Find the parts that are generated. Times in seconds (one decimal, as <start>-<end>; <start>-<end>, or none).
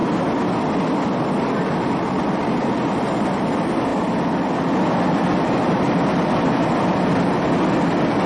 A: 2.1-3.9; 4.6-8.3